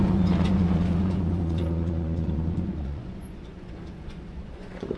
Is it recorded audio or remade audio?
remade